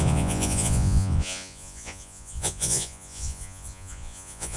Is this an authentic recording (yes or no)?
no